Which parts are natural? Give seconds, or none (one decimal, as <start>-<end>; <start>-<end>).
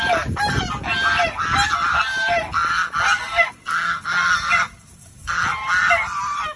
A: 0.0-6.6